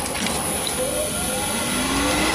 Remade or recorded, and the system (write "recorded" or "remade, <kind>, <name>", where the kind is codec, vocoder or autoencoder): recorded